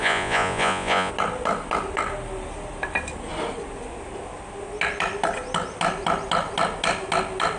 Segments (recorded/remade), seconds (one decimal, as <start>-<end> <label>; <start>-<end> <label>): 0.0-1.1 remade; 1.1-7.6 recorded